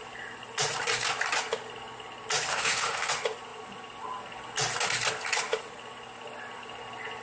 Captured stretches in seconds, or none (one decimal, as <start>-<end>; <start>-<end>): 0.0-2.5; 3.1-7.2